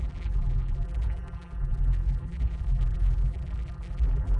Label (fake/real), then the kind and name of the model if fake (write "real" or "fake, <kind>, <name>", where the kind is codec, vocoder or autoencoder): fake, vocoder, BigVGAN v2